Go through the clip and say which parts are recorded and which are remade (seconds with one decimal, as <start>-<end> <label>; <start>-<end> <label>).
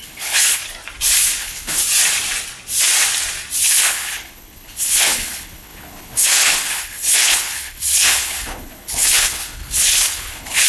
0.0-0.6 remade; 0.6-1.4 recorded; 1.4-1.8 remade; 1.8-3.6 recorded; 3.6-10.7 remade